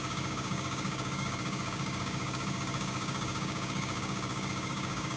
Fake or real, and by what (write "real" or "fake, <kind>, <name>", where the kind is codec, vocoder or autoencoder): fake, codec, DAC